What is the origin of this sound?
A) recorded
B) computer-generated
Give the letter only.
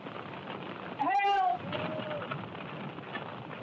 A